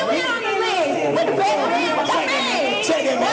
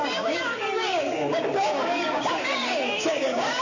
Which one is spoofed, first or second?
second